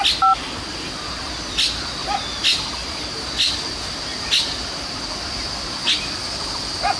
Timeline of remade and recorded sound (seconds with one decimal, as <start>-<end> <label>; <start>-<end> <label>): 0.0-7.0 recorded